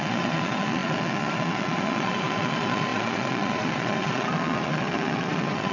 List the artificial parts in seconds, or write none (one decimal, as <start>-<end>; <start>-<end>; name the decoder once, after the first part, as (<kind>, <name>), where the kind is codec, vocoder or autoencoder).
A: 0.0-5.7 (vocoder, Vocos)